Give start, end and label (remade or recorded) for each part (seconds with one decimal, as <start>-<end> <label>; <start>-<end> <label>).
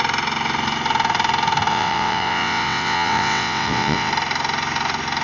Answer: 0.0-1.7 recorded; 1.7-4.1 remade; 4.1-5.2 recorded